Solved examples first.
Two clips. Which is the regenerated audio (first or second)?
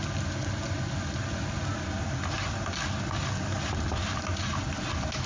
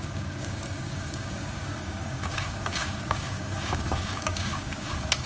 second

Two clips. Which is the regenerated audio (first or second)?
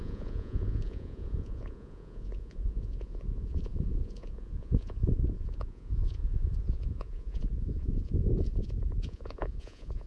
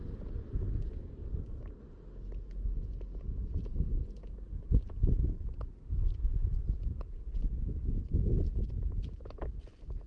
first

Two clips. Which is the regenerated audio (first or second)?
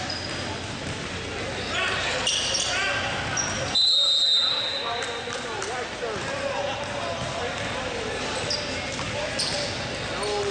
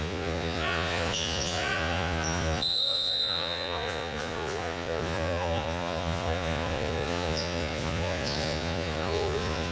second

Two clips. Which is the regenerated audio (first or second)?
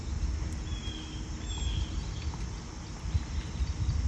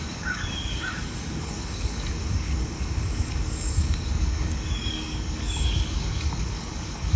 second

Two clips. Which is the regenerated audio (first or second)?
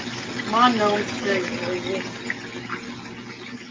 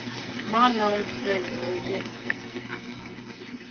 second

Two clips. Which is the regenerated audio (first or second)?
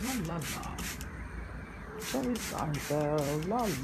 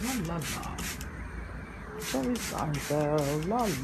first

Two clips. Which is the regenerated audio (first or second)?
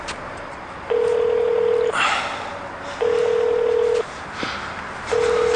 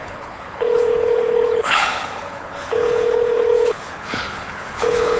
second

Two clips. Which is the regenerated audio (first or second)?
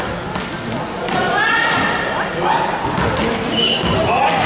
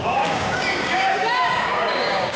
second